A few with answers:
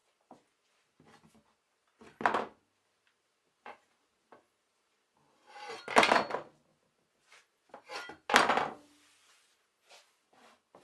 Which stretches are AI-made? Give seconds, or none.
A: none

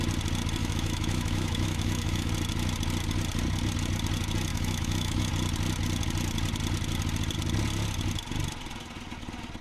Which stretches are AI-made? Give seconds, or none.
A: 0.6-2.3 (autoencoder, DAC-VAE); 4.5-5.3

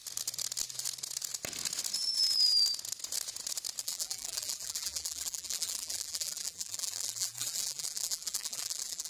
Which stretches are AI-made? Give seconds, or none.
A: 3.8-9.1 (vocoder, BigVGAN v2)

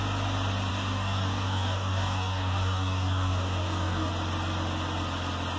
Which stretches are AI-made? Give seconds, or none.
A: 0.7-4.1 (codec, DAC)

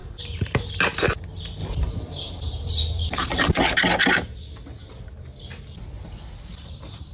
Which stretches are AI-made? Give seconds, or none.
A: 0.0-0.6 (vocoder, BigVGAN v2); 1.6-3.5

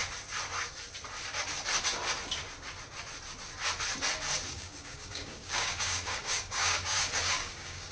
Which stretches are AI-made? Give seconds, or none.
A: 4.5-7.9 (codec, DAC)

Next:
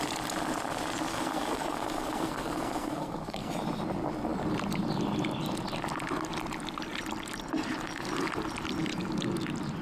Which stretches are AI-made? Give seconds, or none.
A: 1.1-3.5 (codec, SNAC)

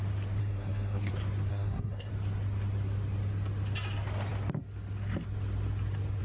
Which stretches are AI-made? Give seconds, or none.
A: 0.4-1.1 (codec, SNAC); 1.5-2.1